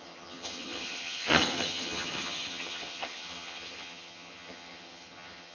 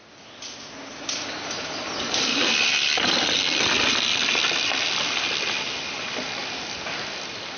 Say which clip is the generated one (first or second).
first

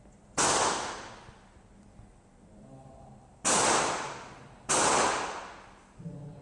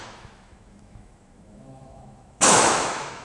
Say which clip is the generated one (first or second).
second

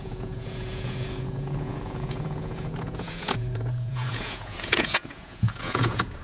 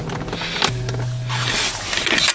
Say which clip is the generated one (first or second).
first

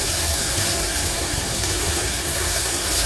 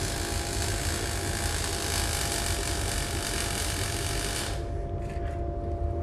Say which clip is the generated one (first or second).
first